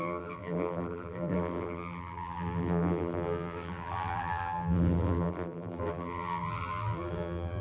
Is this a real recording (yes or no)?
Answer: no